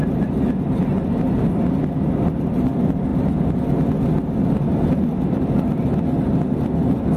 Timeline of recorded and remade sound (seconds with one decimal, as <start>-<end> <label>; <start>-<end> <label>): 0.0-7.2 recorded